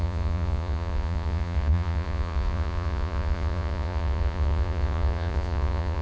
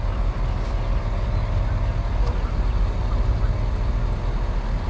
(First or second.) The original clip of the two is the second